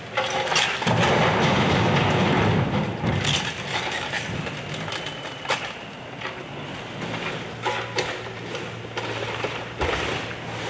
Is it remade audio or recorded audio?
recorded